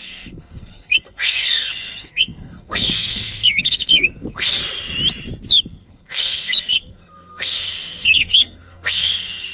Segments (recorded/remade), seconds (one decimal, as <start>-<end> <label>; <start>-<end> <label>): 0.0-4.6 remade; 4.6-5.6 recorded; 5.6-9.5 remade